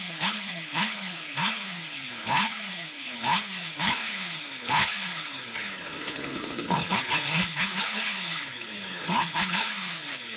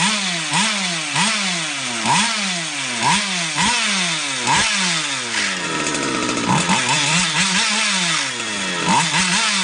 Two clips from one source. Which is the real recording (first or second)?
second